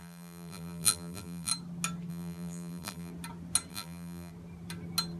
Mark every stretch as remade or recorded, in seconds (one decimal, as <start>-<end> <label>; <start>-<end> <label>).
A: 0.0-1.5 remade; 1.5-2.1 recorded; 2.1-3.1 remade; 3.1-3.7 recorded; 3.7-4.3 remade; 4.3-5.2 recorded

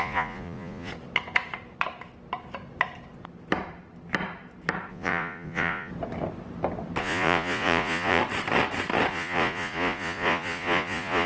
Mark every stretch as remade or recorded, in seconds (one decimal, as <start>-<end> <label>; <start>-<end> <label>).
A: 0.0-0.9 remade; 0.9-4.9 recorded; 4.9-5.9 remade; 5.9-7.0 recorded; 7.0-8.2 remade; 8.2-9.1 recorded; 9.1-11.3 remade

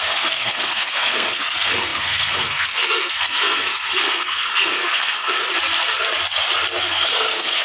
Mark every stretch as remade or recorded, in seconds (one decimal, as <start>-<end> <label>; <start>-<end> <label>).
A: 0.0-5.4 remade; 5.4-6.8 recorded; 6.8-7.6 remade

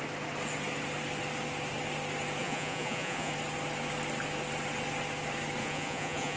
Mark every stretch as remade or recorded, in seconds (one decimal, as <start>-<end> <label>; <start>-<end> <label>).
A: 0.0-2.4 recorded; 2.4-3.3 remade; 3.3-5.6 recorded; 5.6-6.4 remade

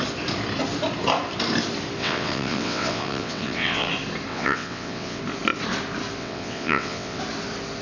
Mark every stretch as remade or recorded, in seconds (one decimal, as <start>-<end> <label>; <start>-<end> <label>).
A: 0.0-2.0 recorded; 2.0-3.9 remade; 3.9-4.3 recorded; 4.3-5.2 remade; 5.2-6.2 recorded; 6.2-7.2 remade; 7.2-7.8 recorded

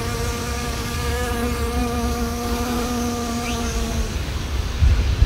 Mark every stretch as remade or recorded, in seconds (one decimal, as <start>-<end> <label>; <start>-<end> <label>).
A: 0.0-0.4 recorded; 0.4-1.3 remade; 1.3-1.8 recorded; 1.8-4.8 remade; 4.8-5.3 recorded

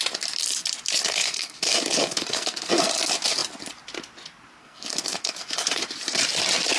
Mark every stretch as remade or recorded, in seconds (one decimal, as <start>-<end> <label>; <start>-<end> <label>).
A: 0.0-1.0 recorded; 1.0-2.9 remade; 2.9-4.6 recorded; 4.6-5.8 remade; 5.8-6.8 recorded

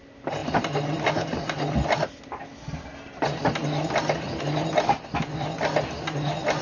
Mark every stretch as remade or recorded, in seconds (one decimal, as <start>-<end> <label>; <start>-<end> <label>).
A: 0.0-6.6 recorded